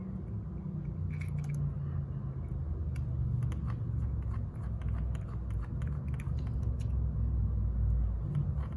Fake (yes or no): no